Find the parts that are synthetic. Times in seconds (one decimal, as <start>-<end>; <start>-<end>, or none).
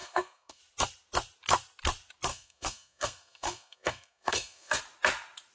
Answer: 0.0-0.6; 2.3-4.8